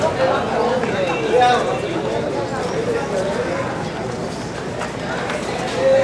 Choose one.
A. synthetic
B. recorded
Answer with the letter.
B